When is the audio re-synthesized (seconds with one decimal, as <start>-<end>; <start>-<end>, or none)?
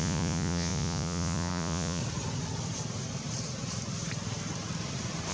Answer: 0.0-2.0